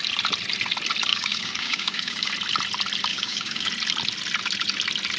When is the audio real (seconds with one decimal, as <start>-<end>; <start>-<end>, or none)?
0.0-1.1; 2.3-3.1; 3.7-5.2